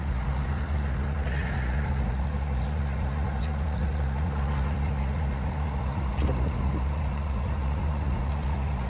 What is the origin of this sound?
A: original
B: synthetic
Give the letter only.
B